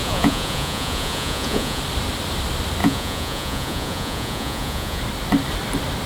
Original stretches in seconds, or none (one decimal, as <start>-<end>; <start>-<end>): 1.8-2.8; 5.0-6.1